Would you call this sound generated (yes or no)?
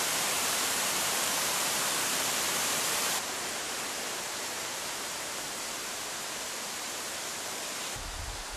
yes